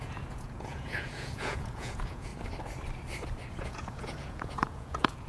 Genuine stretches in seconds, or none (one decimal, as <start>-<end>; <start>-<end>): 2.3-3.5